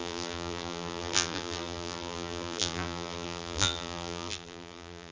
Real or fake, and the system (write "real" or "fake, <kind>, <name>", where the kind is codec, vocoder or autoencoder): fake, vocoder, BigVGAN v2